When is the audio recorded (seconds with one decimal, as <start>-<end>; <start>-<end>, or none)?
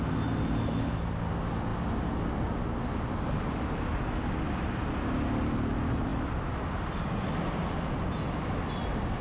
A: 0.0-9.2